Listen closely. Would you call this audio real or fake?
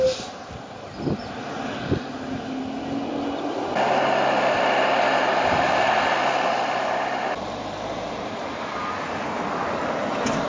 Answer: real